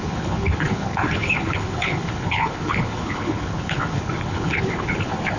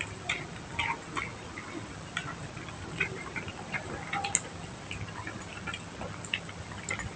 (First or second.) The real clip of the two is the second